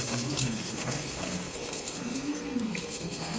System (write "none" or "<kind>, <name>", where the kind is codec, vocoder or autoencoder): codec, SNAC